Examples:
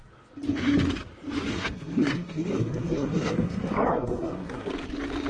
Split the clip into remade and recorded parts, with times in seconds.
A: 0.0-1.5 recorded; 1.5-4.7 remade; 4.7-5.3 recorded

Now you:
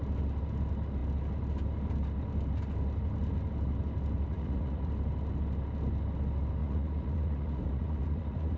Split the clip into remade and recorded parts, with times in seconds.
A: 0.0-4.3 recorded; 4.3-4.9 remade; 4.9-6.6 recorded; 6.6-8.6 remade

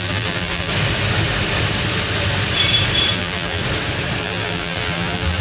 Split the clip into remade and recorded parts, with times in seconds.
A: 0.0-0.7 remade; 0.7-3.1 recorded; 3.1-3.6 remade; 3.6-4.2 recorded; 4.2-5.4 remade